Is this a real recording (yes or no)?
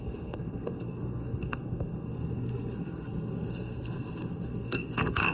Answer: no